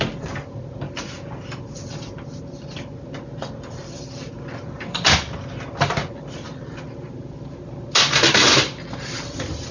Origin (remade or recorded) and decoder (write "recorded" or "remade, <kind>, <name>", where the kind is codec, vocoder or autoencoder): recorded